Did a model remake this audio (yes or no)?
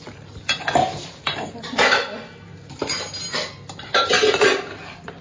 no